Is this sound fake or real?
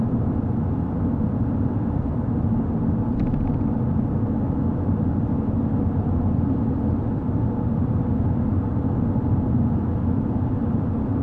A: real